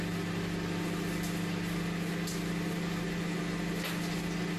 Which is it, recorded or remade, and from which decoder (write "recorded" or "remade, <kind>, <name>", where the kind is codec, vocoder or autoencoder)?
recorded